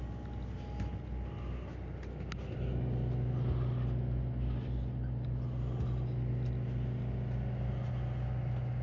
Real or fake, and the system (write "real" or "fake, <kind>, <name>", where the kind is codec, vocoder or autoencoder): real